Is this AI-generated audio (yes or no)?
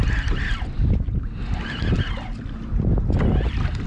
no